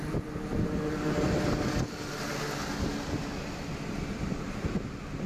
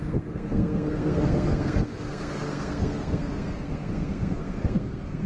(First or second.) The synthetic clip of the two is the second